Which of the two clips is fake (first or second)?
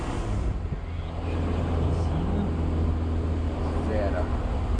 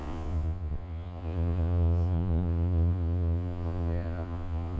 second